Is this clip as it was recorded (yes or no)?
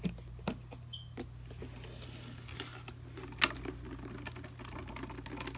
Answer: yes